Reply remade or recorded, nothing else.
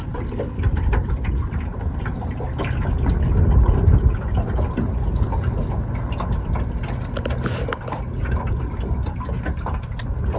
recorded